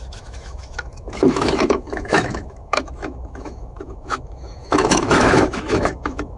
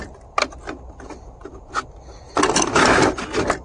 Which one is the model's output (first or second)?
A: first